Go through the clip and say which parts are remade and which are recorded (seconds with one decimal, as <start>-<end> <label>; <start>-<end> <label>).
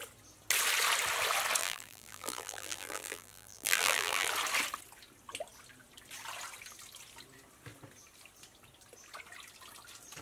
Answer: 0.0-1.6 recorded; 1.6-4.3 remade; 4.3-10.2 recorded